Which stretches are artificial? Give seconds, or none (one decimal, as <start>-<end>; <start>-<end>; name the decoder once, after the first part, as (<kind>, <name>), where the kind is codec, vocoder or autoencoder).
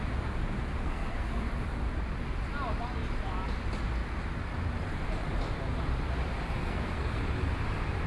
0.8-1.5 (codec, SNAC); 6.6-7.2